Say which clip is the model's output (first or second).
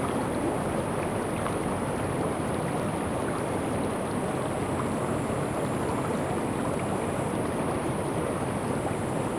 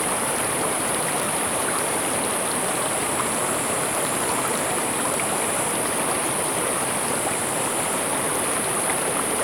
second